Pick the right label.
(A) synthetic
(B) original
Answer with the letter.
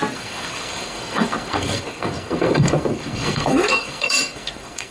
A